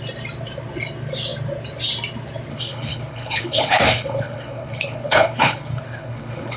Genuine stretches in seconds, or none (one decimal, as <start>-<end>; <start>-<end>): 0.0-2.5